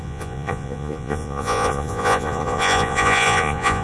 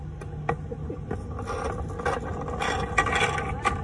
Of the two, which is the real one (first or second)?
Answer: second